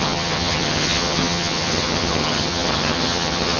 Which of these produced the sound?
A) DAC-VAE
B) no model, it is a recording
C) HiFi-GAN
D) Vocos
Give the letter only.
C